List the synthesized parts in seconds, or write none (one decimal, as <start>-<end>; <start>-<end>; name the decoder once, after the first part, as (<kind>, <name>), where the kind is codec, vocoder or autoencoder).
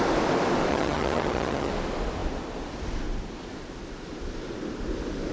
0.7-1.7 (vocoder, HiFi-GAN)